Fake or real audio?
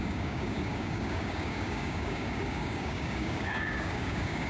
fake